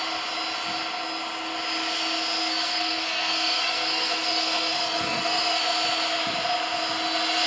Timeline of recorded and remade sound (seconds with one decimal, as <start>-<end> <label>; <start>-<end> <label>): 0.0-2.4 recorded; 2.4-5.6 remade; 5.6-7.5 recorded